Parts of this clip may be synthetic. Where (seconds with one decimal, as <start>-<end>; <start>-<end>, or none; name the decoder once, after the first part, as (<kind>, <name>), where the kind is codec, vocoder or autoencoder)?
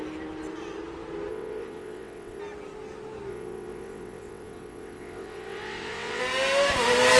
1.3-2.4 (vocoder, WaveNeXt); 3.3-6.2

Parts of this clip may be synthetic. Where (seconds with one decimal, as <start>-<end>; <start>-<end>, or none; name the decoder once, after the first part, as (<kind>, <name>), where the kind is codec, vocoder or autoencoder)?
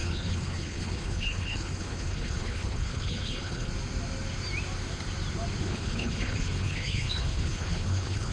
0.0-3.7 (codec, HILCodec); 5.6-8.3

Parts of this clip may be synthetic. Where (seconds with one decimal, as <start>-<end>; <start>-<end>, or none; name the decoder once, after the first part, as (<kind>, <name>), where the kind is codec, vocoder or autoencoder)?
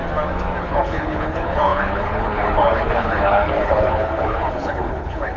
0.6-5.4 (codec, HILCodec)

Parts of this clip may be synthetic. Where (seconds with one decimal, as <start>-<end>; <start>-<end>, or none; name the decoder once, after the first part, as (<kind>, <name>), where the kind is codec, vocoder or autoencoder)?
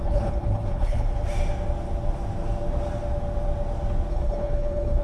0.0-1.1 (codec, HILCodec); 4.1-5.0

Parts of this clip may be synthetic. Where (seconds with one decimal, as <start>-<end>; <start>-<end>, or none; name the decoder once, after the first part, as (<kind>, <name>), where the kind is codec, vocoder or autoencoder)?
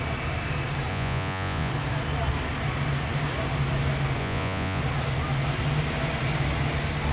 0.9-1.7 (vocoder, Vocos); 4.2-4.8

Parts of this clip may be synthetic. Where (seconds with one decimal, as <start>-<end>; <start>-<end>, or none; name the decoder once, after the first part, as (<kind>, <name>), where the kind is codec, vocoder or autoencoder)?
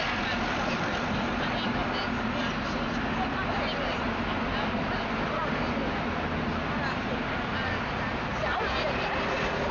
0.0-1.8 (vocoder, BigVGAN v2); 4.7-5.8